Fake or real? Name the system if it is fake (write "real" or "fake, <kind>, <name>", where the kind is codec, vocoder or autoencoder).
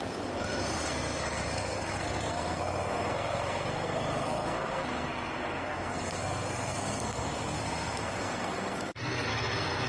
fake, codec, SNAC